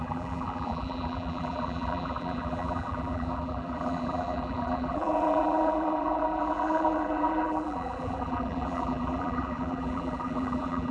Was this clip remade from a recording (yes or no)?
yes